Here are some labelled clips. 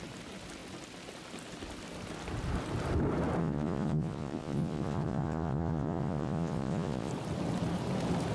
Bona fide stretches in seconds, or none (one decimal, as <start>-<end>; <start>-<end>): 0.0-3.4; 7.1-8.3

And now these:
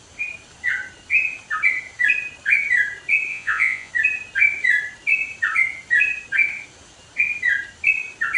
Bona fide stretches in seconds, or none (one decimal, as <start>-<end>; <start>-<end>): 0.0-3.3; 3.9-8.4

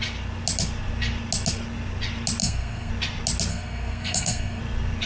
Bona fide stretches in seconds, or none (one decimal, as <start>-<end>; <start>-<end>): 0.0-2.4; 2.9-3.5; 4.6-5.1

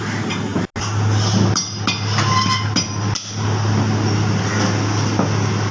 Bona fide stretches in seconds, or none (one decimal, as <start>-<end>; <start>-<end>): 0.0-5.7

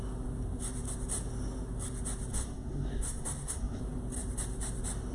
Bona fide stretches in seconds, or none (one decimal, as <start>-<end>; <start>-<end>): 0.0-2.3; 3.8-5.1

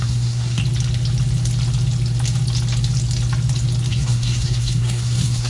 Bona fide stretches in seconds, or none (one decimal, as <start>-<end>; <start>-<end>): 0.6-3.9

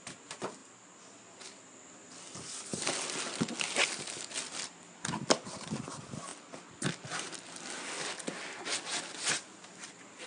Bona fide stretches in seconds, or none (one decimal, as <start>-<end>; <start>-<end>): 0.0-10.3